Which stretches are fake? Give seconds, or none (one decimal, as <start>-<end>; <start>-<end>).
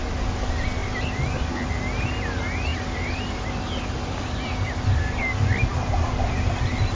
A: 2.7-5.2; 5.7-6.3